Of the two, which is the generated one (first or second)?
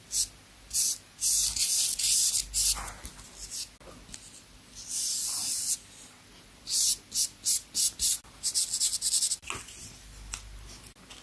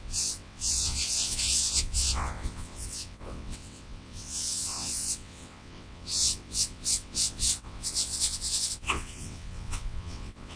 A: second